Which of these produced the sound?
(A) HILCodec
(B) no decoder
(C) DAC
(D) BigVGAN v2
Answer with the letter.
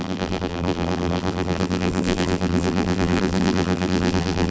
D